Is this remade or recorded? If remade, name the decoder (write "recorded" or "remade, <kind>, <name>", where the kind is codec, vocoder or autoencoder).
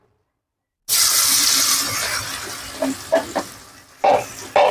recorded